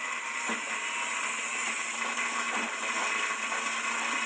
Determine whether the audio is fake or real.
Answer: real